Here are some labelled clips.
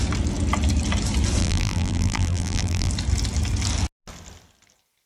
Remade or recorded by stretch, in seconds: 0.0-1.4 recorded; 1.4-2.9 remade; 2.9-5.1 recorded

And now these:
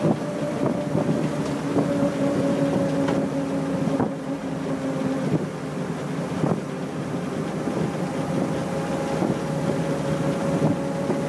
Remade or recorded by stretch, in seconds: 0.0-11.3 recorded

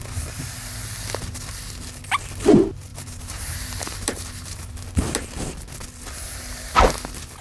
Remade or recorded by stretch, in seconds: 0.0-2.9 recorded; 2.9-4.7 remade; 4.7-7.4 recorded

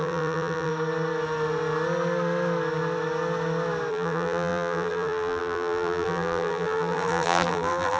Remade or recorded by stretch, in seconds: 0.0-0.7 remade; 0.7-3.9 recorded; 3.9-8.0 remade

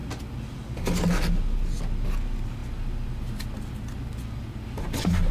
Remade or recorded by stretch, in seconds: 0.0-5.3 recorded

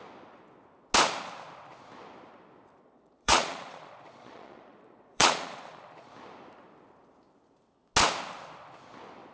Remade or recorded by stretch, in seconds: 0.0-2.8 recorded; 2.8-6.1 remade; 6.1-9.3 recorded

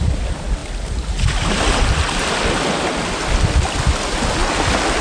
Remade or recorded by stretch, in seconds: 0.0-5.0 recorded

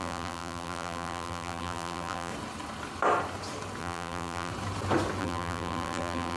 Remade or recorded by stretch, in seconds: 0.0-2.3 remade; 2.3-3.8 recorded; 3.8-4.5 remade; 4.5-5.2 recorded; 5.2-6.4 remade